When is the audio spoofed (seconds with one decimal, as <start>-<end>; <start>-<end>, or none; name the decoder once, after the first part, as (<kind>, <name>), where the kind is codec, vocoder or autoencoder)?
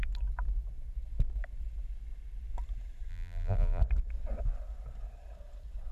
3.1-3.8 (vocoder, BigVGAN v2)